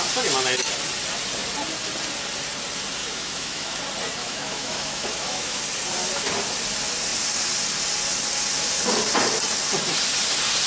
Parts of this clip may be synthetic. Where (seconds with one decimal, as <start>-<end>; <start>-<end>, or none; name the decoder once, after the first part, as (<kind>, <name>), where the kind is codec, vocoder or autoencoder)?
3.0-3.8 (autoencoder, DAC-VAE); 4.2-5.6